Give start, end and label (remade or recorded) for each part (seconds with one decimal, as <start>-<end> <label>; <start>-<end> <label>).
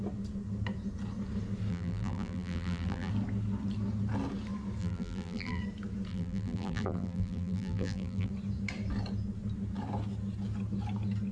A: 0.0-1.7 recorded; 1.7-3.1 remade; 3.1-4.8 recorded; 4.8-5.6 remade; 5.6-6.1 recorded; 6.1-8.3 remade; 8.3-11.3 recorded